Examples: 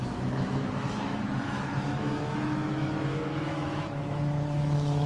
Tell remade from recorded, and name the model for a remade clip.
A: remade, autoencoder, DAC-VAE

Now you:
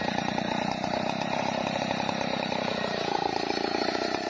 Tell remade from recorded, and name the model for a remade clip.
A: remade, vocoder, BigVGAN v2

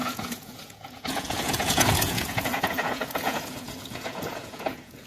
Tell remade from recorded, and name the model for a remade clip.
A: remade, vocoder, Vocos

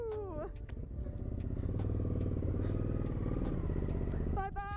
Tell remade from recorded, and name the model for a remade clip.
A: recorded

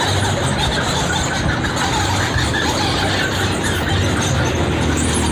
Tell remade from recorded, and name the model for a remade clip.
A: recorded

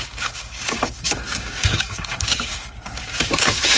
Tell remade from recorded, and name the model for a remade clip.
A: remade, codec, DAC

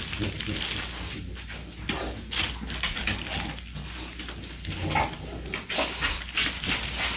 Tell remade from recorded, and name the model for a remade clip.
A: recorded